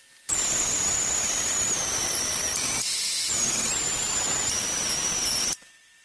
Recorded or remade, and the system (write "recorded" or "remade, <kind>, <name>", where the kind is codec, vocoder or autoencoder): recorded